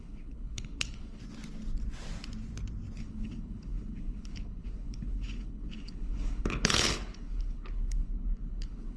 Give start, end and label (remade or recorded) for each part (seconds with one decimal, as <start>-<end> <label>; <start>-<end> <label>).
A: 0.0-1.2 remade; 1.2-3.0 recorded; 3.0-9.0 remade